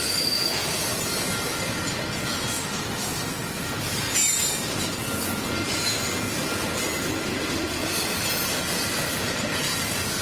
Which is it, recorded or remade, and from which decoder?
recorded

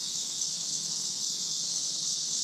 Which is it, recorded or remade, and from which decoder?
remade, codec, SNAC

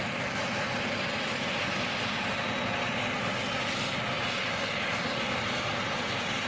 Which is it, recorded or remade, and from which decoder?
recorded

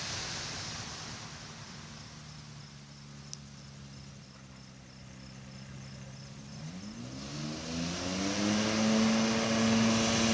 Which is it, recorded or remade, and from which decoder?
recorded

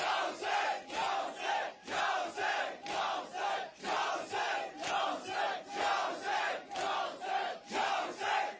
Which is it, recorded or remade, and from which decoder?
recorded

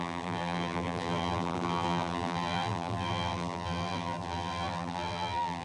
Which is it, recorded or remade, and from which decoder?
remade, vocoder, BigVGAN v2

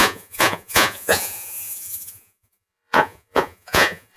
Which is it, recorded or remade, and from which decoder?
remade, vocoder, Vocos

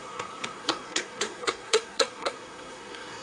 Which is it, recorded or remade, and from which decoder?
remade, codec, SNAC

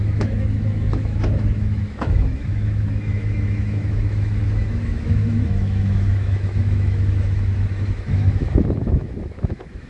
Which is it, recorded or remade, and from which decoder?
remade, autoencoder, DAC-VAE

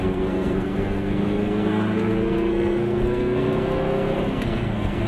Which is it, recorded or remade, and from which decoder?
remade, codec, SNAC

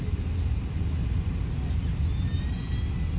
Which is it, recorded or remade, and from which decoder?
recorded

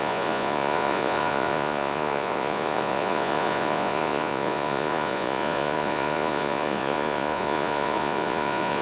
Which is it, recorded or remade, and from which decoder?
remade, vocoder, Vocos